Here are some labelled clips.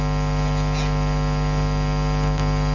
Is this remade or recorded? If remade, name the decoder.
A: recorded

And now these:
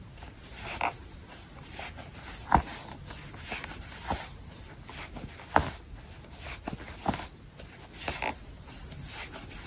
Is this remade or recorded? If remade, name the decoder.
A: recorded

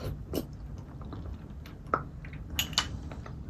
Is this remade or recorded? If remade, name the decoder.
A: recorded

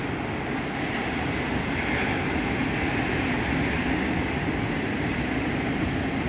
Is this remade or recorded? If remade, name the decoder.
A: recorded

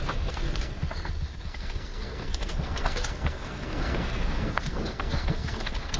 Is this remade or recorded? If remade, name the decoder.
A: remade, codec, SNAC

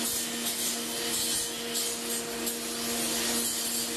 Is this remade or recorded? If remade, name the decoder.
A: recorded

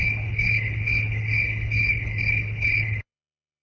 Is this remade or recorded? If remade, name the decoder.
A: remade, codec, HILCodec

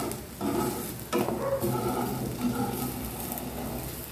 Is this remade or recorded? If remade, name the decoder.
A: recorded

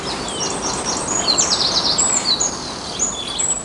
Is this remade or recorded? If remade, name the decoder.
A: recorded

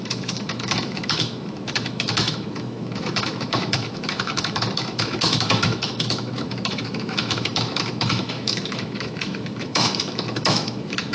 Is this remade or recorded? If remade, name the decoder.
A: remade, autoencoder, DAC-VAE